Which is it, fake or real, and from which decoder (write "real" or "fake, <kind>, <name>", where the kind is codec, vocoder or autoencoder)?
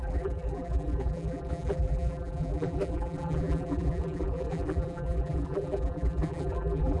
fake, vocoder, BigVGAN v2